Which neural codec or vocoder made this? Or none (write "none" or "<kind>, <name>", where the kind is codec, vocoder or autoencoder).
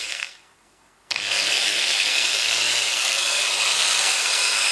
codec, SNAC